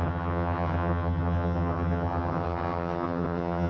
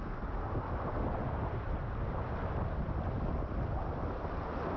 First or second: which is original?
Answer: second